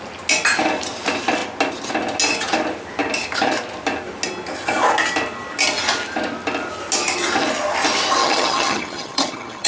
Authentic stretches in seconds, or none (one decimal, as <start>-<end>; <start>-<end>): 0.0-8.2

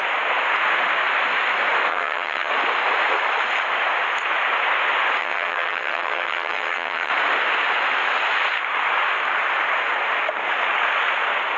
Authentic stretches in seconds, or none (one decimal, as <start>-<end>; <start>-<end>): 0.0-1.9; 2.5-5.2; 7.1-11.6